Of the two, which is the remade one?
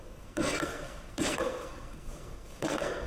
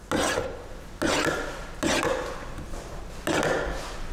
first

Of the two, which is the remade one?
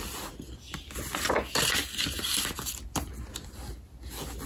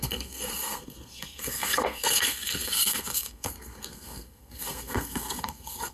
second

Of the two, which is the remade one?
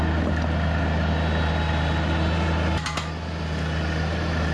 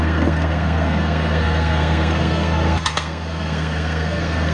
second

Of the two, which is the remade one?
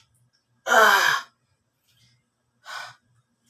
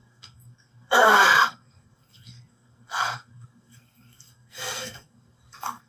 second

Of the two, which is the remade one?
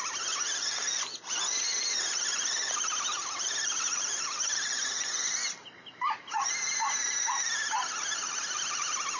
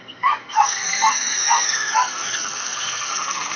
second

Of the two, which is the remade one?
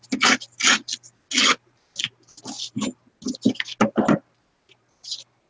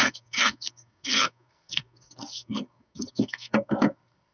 second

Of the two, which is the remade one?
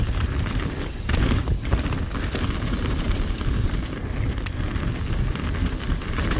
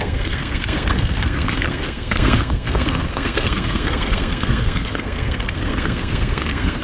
second